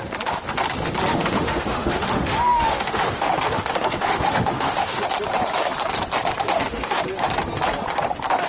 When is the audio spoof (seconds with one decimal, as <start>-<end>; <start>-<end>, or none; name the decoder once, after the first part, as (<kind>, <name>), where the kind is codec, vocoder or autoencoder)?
1.1-5.0 (autoencoder, DAC-VAE); 6.5-7.0